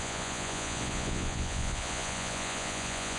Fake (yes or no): yes